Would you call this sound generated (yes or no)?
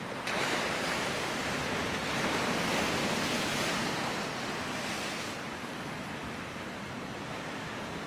no